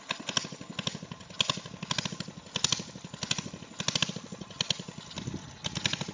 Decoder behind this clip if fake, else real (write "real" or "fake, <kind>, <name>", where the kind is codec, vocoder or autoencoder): real